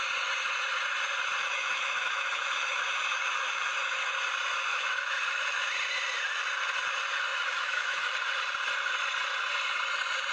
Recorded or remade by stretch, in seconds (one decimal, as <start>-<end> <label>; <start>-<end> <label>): 0.0-1.4 recorded; 1.4-4.1 remade; 4.1-4.7 recorded; 4.7-5.7 remade; 5.7-7.3 recorded; 7.3-8.1 remade; 8.1-10.3 recorded

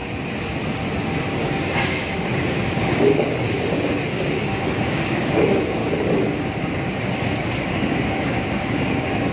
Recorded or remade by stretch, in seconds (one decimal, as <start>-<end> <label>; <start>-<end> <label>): 0.0-1.3 recorded; 1.3-5.8 remade; 5.8-7.1 recorded; 7.1-9.3 remade

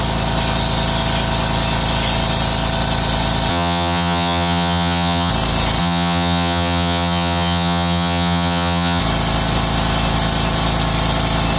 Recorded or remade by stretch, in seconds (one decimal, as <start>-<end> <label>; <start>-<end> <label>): 0.0-3.5 recorded; 3.5-5.3 remade; 5.3-5.8 recorded; 5.8-9.0 remade; 9.0-11.6 recorded

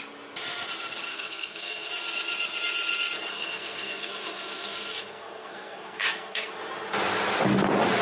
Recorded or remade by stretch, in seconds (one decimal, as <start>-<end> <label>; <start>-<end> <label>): 0.0-1.1 recorded; 1.1-1.9 remade; 1.9-3.3 recorded; 3.3-6.5 remade; 6.5-8.0 recorded

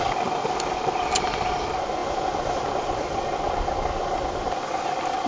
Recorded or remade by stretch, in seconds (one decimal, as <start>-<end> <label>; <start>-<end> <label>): 0.0-5.3 recorded

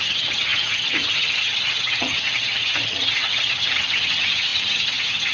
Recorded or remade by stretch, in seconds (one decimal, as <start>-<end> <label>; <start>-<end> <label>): 0.0-5.3 remade

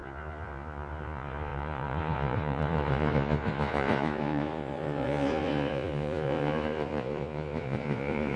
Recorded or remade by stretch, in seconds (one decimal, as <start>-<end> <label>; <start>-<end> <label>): 0.0-8.4 remade

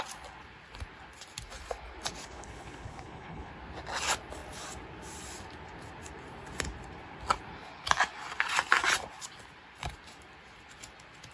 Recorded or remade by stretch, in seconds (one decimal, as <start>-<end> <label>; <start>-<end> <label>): 0.0-2.2 recorded; 2.2-3.5 remade; 3.5-11.3 recorded